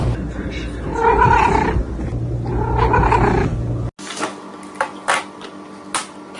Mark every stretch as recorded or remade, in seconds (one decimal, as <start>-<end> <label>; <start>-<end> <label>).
0.0-6.4 recorded